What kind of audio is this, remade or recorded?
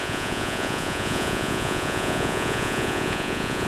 remade